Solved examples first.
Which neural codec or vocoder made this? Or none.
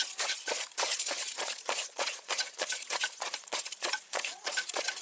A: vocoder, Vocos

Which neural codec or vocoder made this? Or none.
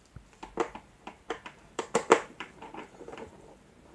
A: vocoder, BigVGAN v2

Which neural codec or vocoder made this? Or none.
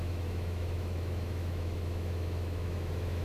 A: autoencoder, DAC-VAE